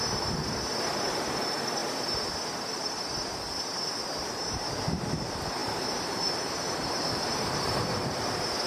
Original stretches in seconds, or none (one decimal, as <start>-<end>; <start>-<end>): 0.0-0.8; 1.8-2.5